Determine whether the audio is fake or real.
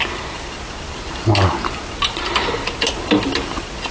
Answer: real